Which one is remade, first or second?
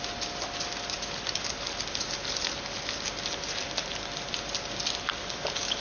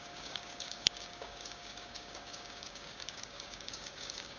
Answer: second